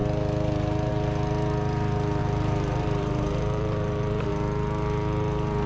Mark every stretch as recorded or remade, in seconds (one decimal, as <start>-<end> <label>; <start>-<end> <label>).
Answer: 0.0-2.2 recorded; 2.2-4.3 remade; 4.3-5.7 recorded